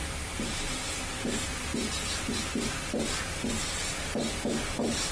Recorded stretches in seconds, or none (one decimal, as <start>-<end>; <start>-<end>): 0.0-4.6